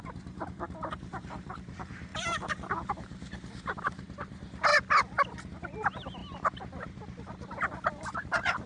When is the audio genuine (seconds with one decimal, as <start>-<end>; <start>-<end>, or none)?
2.1-2.9; 4.7-5.5

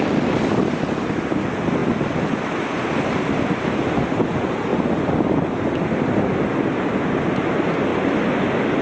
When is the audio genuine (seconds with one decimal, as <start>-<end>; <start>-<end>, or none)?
0.0-8.8

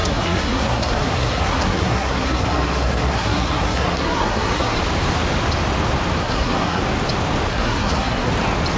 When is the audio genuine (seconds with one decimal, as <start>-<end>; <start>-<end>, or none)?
4.8-6.2; 6.8-7.5; 8.3-8.8